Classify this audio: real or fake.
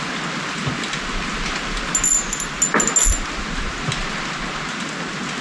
real